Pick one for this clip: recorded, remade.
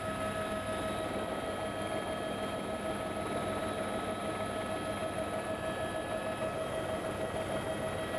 recorded